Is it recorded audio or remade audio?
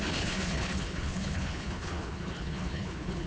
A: remade